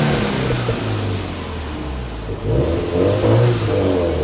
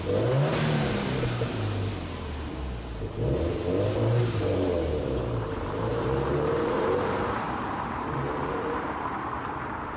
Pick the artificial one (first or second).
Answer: second